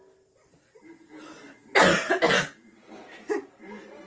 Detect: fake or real real